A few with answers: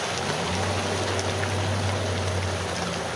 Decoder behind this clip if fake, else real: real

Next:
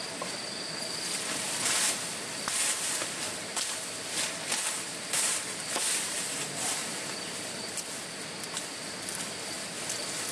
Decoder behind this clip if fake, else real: real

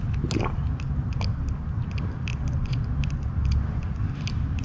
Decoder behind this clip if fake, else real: real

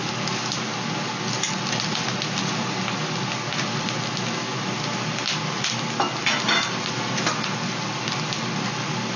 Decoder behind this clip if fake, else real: real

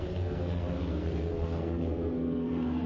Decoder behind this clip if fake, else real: fake, codec, SNAC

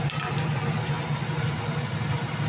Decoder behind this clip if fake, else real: real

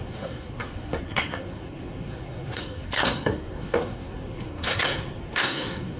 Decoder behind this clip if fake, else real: fake, codec, SNAC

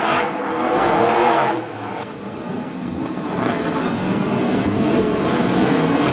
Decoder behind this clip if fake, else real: fake, codec, SNAC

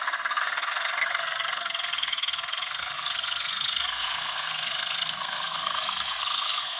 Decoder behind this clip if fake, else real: fake, codec, SNAC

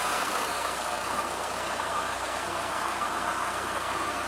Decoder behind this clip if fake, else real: fake, codec, SNAC